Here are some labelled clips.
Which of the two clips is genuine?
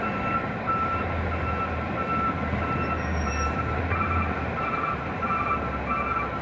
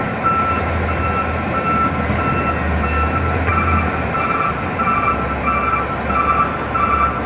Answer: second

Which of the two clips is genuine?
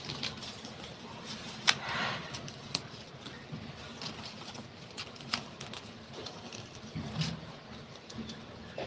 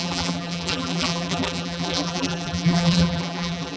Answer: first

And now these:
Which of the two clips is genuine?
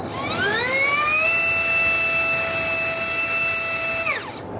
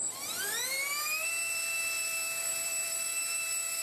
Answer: first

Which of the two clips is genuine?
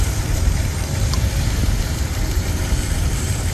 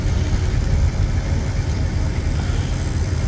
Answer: second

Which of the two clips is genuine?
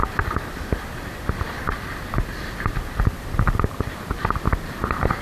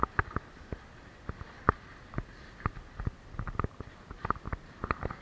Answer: second